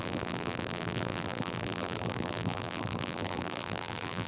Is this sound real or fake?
fake